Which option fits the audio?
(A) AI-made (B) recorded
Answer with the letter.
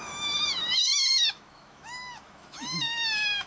A